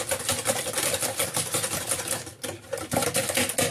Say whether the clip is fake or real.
real